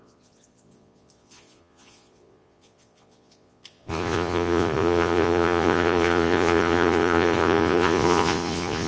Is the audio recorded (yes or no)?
no